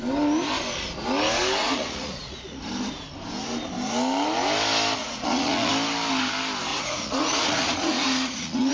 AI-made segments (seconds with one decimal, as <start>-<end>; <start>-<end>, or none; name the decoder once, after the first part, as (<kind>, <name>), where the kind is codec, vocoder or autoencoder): 1.6-2.6 (vocoder, Vocos); 5.0-5.7; 6.7-8.7